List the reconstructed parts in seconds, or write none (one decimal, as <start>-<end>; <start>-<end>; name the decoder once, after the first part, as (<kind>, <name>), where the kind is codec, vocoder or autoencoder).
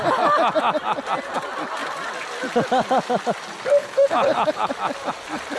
3.8-4.7 (codec, HILCodec)